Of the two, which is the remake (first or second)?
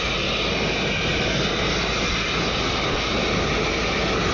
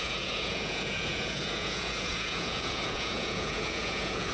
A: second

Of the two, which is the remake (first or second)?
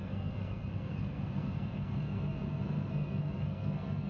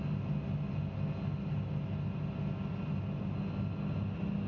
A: first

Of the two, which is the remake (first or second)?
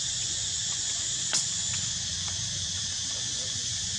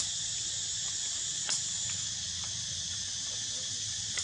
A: first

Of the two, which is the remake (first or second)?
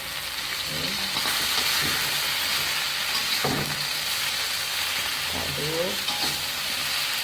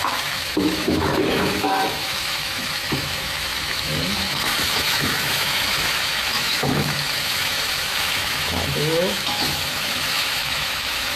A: second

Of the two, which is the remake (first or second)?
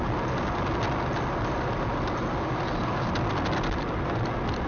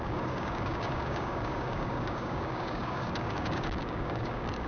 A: second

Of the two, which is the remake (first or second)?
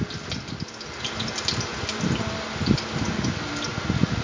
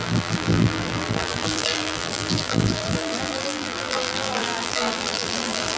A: second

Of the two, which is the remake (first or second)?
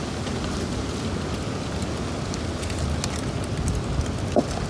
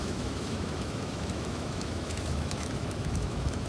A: second